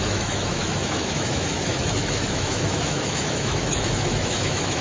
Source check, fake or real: fake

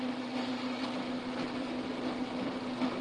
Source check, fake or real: real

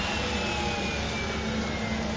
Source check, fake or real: real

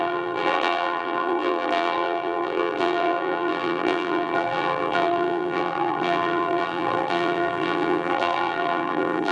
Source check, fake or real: fake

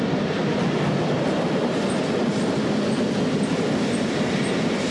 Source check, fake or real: real